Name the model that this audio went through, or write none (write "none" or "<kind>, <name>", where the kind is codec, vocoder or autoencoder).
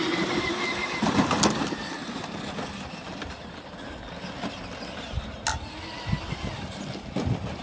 none